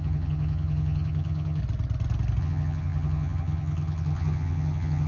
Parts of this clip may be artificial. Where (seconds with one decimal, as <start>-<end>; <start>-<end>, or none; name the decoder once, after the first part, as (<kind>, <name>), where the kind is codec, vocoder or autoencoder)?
0.0-1.6 (vocoder, HiFi-GAN); 2.4-5.1